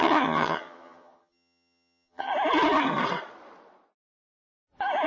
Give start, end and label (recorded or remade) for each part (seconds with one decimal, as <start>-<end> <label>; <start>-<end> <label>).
0.0-2.3 remade; 2.3-5.1 recorded